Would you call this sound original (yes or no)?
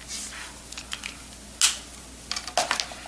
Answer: yes